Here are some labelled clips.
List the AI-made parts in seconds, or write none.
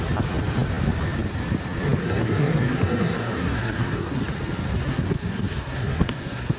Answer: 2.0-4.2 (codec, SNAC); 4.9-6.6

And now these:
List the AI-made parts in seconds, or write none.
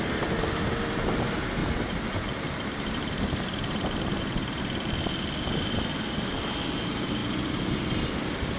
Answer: 1.6-4.6 (vocoder, BigVGAN v2); 7.2-8.6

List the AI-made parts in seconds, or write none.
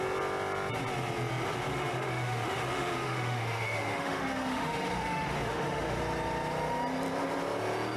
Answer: 1.7-6.0 (autoencoder, DAC-VAE)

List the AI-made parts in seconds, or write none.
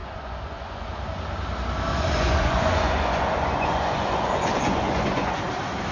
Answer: 0.0-0.9 (vocoder, Vocos); 1.9-5.4